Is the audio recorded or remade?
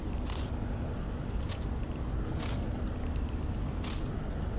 recorded